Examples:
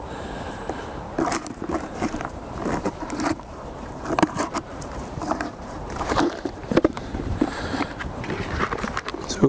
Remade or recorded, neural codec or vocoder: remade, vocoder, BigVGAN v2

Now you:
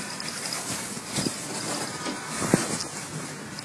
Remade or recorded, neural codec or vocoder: recorded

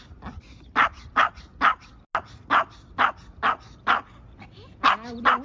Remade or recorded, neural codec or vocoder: recorded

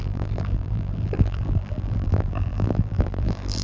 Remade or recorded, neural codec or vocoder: remade, vocoder, BigVGAN v2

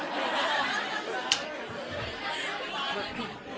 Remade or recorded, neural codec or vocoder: remade, vocoder, BigVGAN v2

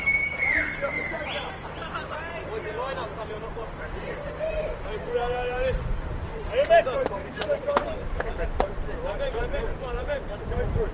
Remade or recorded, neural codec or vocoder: remade, vocoder, BigVGAN v2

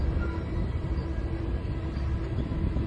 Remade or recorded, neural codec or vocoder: recorded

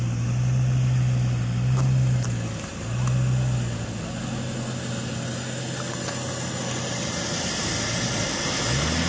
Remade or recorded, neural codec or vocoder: recorded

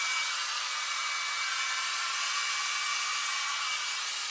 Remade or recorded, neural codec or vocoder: recorded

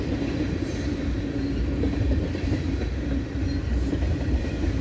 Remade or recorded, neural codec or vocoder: remade, vocoder, BigVGAN v2